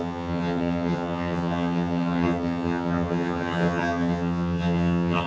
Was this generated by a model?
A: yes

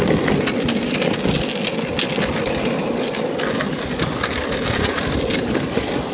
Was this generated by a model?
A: no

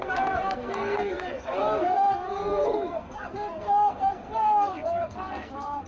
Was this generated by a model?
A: yes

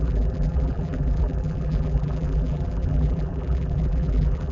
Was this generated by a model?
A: yes